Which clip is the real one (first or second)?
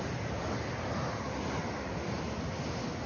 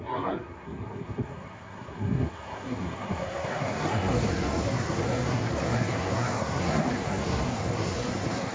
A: first